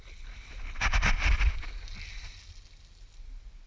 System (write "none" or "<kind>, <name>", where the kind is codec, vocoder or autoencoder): none